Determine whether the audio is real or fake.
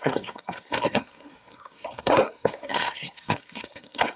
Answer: fake